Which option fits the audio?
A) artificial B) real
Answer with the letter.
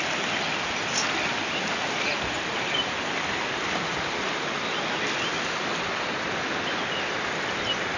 B